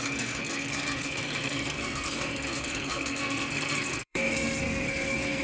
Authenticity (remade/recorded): remade